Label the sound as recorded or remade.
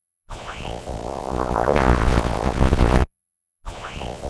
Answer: remade